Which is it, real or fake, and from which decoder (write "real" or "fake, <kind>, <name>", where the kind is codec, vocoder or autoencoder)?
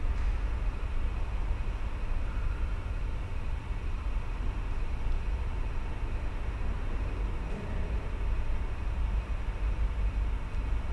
real